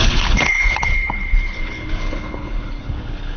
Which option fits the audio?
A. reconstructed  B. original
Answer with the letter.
A